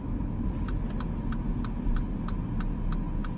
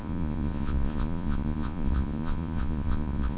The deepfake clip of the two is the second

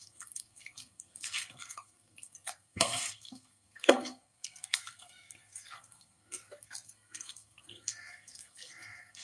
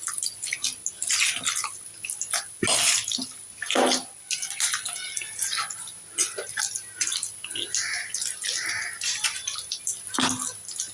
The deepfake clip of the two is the first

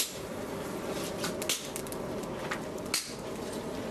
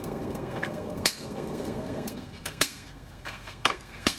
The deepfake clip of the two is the second